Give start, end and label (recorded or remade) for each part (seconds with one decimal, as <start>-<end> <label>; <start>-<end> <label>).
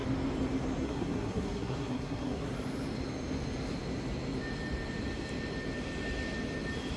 0.0-0.8 recorded; 0.8-2.5 remade; 2.5-7.0 recorded